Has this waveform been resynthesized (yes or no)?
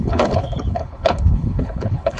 yes